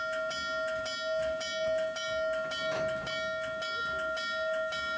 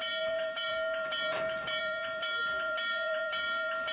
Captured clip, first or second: first